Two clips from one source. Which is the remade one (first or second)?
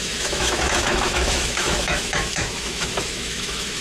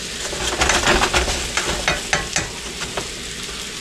first